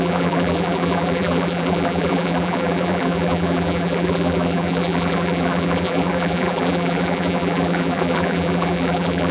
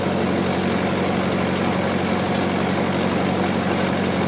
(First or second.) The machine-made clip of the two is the first